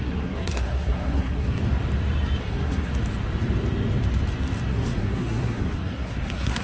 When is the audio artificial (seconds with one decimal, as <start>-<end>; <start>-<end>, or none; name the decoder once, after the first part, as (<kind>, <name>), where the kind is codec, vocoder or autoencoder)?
0.0-1.6 (codec, SNAC); 2.4-2.9; 4.7-6.6